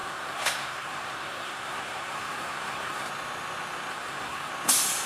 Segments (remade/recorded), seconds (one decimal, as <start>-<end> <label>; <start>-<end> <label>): 0.0-3.1 remade; 3.1-3.9 recorded; 3.9-4.5 remade; 4.5-5.1 recorded